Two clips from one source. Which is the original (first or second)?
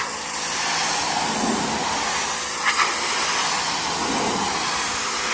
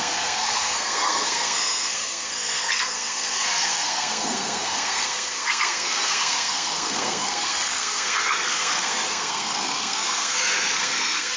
first